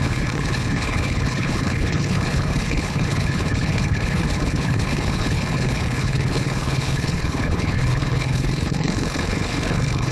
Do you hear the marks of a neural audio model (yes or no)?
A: yes